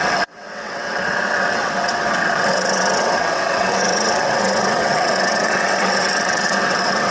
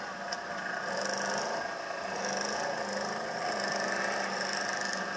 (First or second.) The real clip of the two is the second